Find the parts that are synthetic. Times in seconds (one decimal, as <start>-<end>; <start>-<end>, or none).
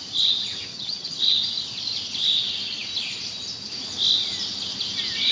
0.7-1.2